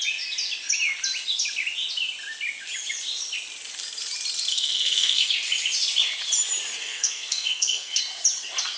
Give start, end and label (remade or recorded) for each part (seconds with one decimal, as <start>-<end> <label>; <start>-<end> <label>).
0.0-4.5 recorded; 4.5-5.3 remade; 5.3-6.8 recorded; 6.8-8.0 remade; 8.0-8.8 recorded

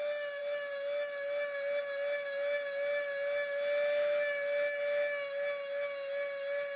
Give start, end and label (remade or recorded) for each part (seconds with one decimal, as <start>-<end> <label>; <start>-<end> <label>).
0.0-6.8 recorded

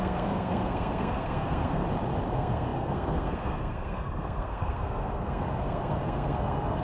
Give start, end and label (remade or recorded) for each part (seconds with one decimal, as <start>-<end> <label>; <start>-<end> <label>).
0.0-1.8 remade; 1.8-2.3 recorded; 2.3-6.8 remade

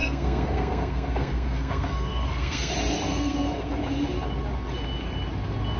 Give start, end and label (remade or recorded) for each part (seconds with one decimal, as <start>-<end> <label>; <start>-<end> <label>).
0.0-2.7 remade; 2.7-3.1 recorded; 3.1-3.7 remade; 3.7-5.8 recorded

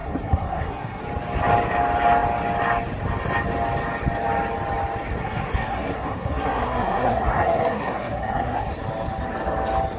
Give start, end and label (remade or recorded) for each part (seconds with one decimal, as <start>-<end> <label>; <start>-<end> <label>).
0.0-1.0 remade; 1.0-5.2 recorded; 5.2-8.7 remade; 8.7-10.0 recorded

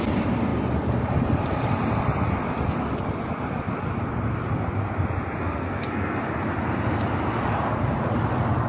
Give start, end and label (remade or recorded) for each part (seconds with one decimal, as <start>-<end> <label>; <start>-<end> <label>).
0.0-5.4 recorded; 5.4-6.2 remade; 6.2-8.7 recorded

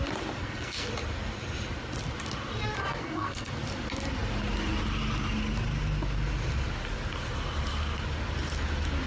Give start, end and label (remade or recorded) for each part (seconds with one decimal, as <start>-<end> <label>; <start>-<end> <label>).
0.0-0.4 recorded; 0.4-0.9 remade; 0.9-2.8 recorded; 2.8-3.5 remade; 3.5-9.1 recorded